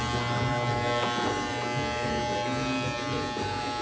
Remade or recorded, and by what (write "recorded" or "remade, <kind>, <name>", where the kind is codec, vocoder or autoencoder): recorded